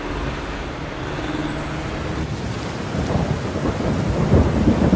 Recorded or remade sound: recorded